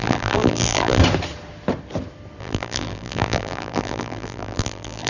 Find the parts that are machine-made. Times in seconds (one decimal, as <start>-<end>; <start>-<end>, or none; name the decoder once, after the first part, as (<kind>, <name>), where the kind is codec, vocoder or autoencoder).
0.0-1.0 (vocoder, BigVGAN v2); 2.4-5.1

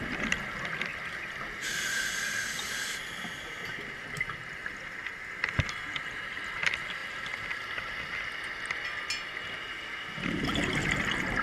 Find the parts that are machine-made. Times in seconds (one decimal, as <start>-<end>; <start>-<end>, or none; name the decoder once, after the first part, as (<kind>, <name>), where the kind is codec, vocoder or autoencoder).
none